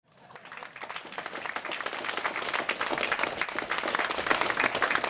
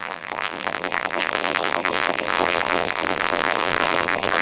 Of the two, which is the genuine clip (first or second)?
first